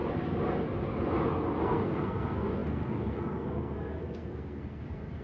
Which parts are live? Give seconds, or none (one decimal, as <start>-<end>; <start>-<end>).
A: 0.0-1.6